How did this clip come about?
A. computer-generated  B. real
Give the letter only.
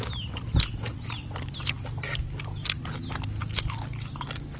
B